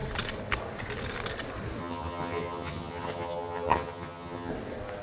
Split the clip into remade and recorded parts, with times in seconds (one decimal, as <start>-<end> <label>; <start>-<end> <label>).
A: 0.0-1.8 recorded; 1.8-4.5 remade; 4.5-5.0 recorded